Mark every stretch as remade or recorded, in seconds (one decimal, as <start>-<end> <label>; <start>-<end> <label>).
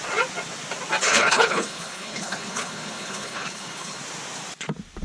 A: 0.0-1.0 recorded; 1.0-4.0 remade; 4.0-5.0 recorded